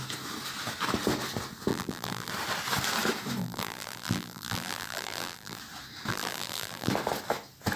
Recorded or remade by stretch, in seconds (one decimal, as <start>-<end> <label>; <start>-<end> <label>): 0.0-1.7 recorded; 1.7-2.3 remade; 2.3-3.4 recorded; 3.4-5.6 remade; 5.6-6.1 recorded; 6.1-6.9 remade; 6.9-7.8 recorded